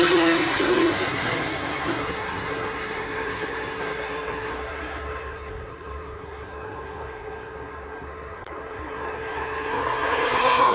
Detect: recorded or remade remade